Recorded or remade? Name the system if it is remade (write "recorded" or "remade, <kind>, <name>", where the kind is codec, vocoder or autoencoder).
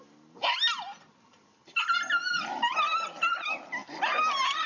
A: recorded